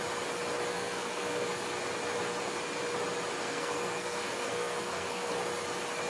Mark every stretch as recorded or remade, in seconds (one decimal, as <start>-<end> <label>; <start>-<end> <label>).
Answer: 0.0-0.7 recorded; 0.7-1.5 remade; 1.5-3.4 recorded; 3.4-5.3 remade; 5.3-6.1 recorded

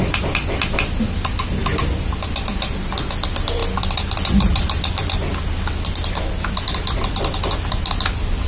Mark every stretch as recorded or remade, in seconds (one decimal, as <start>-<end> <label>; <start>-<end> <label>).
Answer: 0.0-1.8 recorded; 1.8-3.1 remade; 3.1-3.6 recorded; 3.6-7.9 remade; 7.9-8.5 recorded